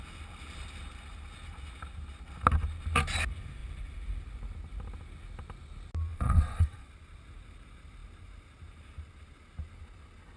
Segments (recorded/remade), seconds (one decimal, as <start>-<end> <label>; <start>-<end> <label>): 0.0-6.1 recorded; 6.1-6.9 remade; 6.9-10.4 recorded